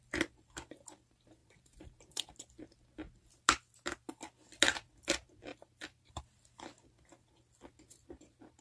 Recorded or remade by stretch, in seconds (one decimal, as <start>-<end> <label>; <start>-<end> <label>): 0.0-1.4 recorded; 1.4-2.3 remade; 2.3-5.5 recorded; 5.5-6.2 remade; 6.2-8.6 recorded